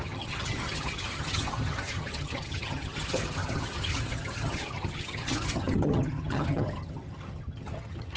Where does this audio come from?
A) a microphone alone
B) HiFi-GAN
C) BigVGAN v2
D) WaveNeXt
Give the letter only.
B